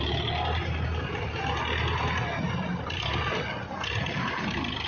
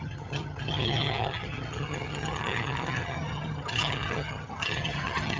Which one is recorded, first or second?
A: first